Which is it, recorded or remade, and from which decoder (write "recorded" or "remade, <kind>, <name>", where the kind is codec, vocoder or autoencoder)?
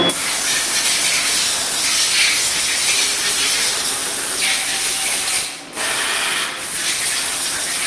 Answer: recorded